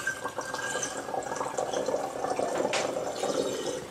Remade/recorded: recorded